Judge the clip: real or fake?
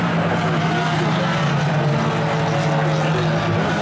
real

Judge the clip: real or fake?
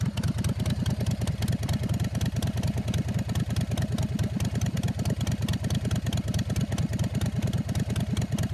real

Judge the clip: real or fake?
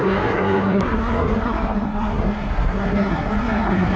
fake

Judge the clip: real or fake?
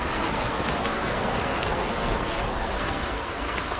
fake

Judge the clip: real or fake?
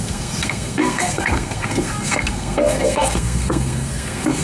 fake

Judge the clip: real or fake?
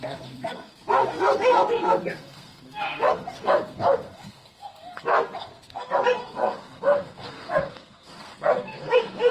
fake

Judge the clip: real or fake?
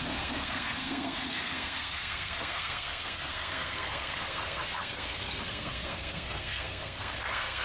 fake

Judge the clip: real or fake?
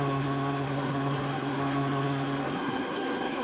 fake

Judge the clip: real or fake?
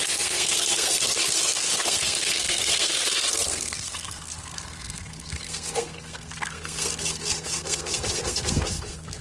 fake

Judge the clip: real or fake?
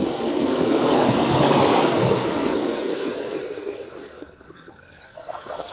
fake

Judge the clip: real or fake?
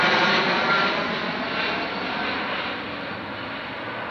real